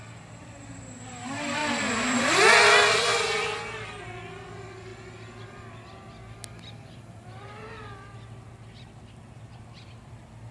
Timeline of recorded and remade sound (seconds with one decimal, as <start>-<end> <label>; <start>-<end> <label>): 0.0-1.6 remade; 1.6-2.2 recorded; 2.2-4.9 remade; 4.9-9.3 recorded; 9.3-10.5 remade